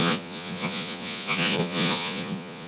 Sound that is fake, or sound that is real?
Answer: fake